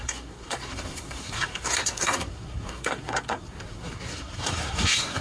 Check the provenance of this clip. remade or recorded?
remade